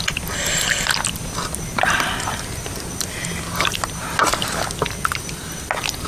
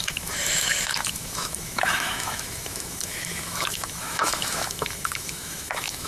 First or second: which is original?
first